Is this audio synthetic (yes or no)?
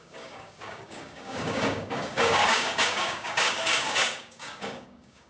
yes